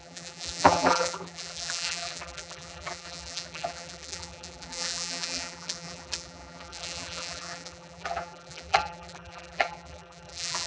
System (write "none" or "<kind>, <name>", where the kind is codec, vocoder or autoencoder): vocoder, BigVGAN v2